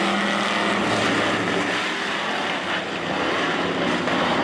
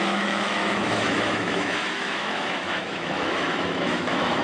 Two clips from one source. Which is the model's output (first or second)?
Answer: second